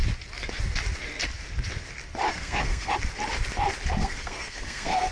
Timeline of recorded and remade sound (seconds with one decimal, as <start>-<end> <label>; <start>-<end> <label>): 0.0-2.3 recorded; 2.3-2.9 remade; 2.9-4.0 recorded; 4.0-5.1 remade